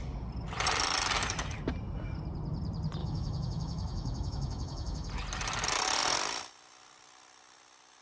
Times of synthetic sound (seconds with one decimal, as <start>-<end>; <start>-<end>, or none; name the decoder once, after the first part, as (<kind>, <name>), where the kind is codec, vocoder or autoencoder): 3.0-5.1 (autoencoder, DAC-VAE)